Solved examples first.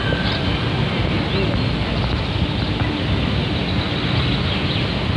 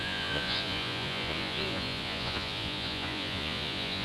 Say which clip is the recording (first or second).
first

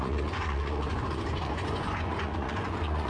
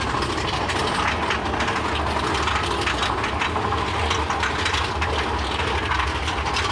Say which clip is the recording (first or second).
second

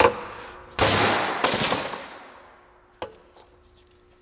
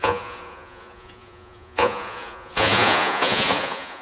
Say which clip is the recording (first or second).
first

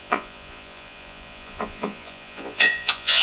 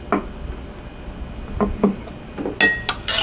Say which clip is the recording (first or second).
second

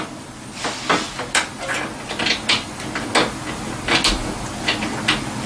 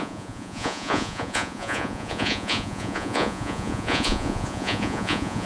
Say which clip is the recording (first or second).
first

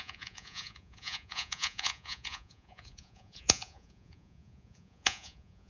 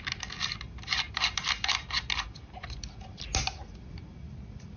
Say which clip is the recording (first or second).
second